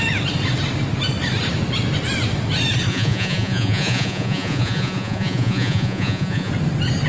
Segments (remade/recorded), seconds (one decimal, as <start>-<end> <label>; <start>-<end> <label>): 0.0-2.9 recorded; 2.9-6.5 remade; 6.5-7.1 recorded